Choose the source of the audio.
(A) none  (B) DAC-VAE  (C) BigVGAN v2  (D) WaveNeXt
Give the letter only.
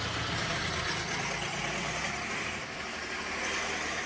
A